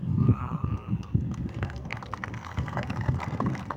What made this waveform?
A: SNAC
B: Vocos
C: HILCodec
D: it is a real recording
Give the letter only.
A